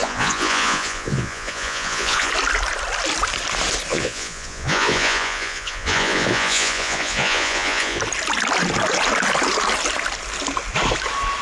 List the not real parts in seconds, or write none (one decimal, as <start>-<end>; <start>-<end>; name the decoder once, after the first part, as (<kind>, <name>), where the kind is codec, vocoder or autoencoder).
0.0-2.3 (vocoder, Vocos); 3.9-8.0